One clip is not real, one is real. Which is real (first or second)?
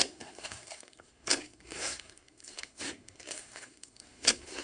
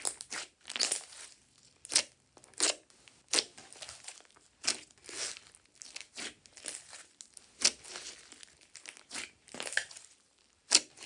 second